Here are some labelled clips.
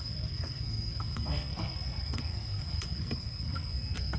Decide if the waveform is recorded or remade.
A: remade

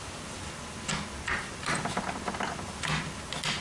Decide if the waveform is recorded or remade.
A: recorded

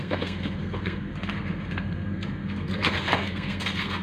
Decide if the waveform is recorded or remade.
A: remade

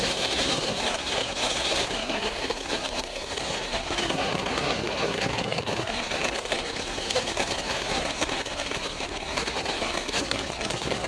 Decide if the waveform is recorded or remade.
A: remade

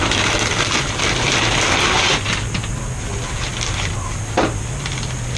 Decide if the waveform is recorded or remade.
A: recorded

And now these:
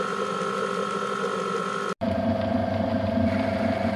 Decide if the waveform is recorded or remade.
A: recorded